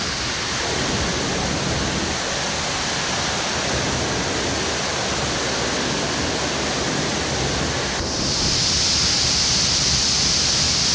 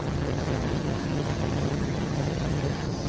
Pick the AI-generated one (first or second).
second